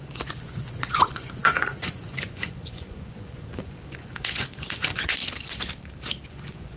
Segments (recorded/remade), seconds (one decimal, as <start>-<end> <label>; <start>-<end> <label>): 0.0-5.2 remade; 5.2-6.3 recorded; 6.3-6.8 remade